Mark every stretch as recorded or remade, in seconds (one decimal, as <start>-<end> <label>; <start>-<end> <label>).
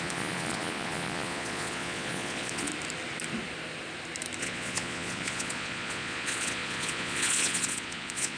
0.0-2.7 remade; 2.7-4.4 recorded; 4.4-8.4 remade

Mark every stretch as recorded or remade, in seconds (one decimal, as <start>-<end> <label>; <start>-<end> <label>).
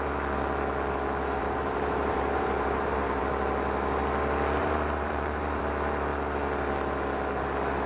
0.0-1.4 recorded; 1.4-3.2 remade; 3.2-4.6 recorded; 4.6-5.6 remade; 5.6-7.9 recorded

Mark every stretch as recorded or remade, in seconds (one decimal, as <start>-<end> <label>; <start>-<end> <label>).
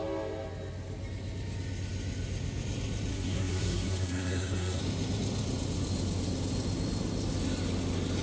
0.0-3.1 recorded; 3.1-4.8 remade; 4.8-8.2 recorded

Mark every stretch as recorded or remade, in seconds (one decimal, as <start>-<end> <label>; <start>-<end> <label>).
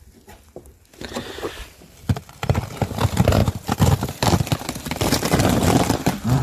0.0-6.4 recorded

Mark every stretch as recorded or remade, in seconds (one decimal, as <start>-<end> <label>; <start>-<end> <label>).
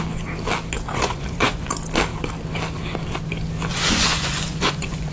0.0-0.9 recorded; 0.9-1.7 remade; 1.7-3.7 recorded; 3.7-5.1 remade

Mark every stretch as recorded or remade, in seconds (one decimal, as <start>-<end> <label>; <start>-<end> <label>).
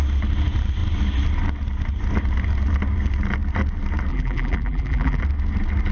0.0-4.1 recorded; 4.1-5.2 remade; 5.2-5.9 recorded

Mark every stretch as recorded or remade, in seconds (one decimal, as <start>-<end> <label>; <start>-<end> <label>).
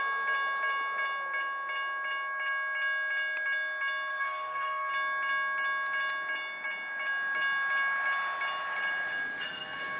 0.0-4.1 recorded; 4.1-4.9 remade; 4.9-10.0 recorded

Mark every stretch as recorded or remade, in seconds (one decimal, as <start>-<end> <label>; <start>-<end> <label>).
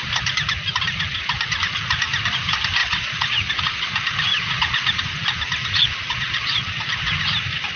0.0-2.8 recorded; 2.8-3.6 remade; 3.6-4.3 recorded; 4.3-5.0 remade; 5.0-5.6 recorded; 5.6-6.8 remade; 6.8-7.8 recorded